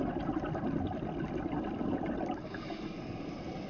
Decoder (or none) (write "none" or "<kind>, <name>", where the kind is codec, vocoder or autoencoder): none